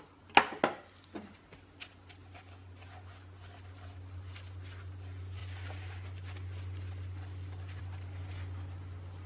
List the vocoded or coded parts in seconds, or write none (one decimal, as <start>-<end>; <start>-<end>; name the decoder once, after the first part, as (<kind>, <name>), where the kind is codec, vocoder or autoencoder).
none